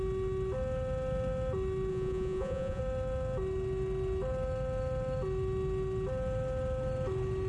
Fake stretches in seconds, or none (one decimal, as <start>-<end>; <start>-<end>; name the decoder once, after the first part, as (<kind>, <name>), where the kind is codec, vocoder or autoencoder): 1.9-2.8 (vocoder, Vocos)